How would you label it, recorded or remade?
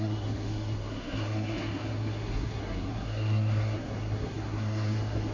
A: remade